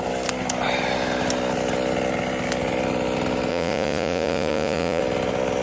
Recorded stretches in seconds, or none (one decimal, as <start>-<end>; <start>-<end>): 0.0-3.5; 5.0-5.6

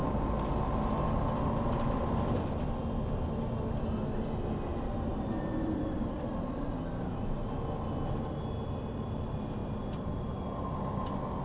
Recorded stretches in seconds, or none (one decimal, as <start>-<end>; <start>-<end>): 0.0-5.1; 6.3-9.6; 10.7-11.4

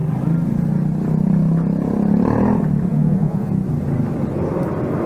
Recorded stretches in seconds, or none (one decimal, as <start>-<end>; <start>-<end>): 0.0-2.9; 3.5-5.1